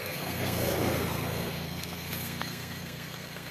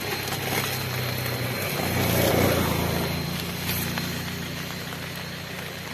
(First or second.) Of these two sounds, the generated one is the first